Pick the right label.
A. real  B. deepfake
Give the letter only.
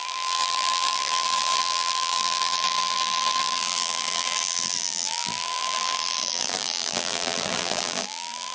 B